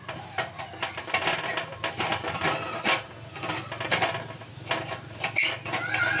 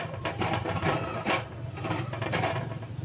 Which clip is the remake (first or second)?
second